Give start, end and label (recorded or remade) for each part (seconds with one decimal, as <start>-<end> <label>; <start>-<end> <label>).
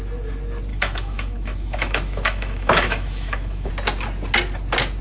0.0-0.7 recorded; 0.7-3.7 remade; 3.7-5.0 recorded